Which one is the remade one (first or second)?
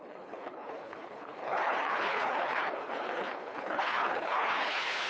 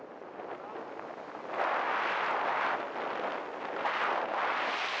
first